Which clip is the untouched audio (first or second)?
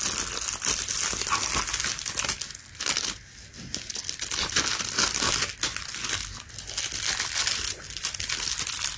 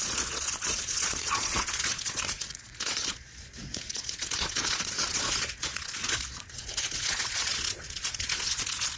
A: first